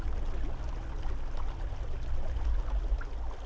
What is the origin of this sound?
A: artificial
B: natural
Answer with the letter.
B